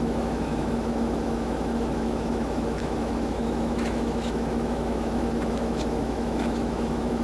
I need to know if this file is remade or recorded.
remade